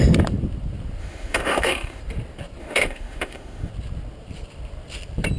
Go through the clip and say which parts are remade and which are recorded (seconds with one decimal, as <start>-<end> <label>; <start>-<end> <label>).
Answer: 0.0-1.0 recorded; 1.0-2.0 remade; 2.0-2.6 recorded; 2.6-3.7 remade; 3.7-5.4 recorded